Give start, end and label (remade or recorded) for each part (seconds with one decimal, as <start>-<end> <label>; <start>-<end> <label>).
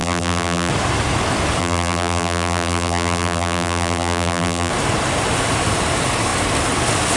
0.0-0.7 remade; 0.7-1.6 recorded; 1.6-4.7 remade; 4.7-7.2 recorded